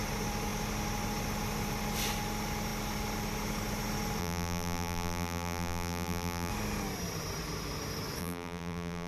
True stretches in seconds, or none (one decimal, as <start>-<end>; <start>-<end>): 0.0-4.2; 6.5-8.2